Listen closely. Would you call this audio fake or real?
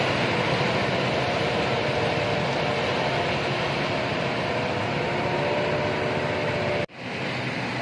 real